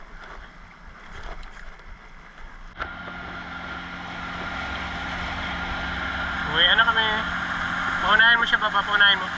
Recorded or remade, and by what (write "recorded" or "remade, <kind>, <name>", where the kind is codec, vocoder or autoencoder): recorded